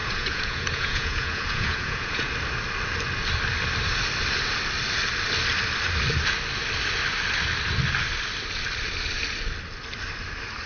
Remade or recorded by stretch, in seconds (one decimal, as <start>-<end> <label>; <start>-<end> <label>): 0.0-2.3 remade; 2.3-10.7 recorded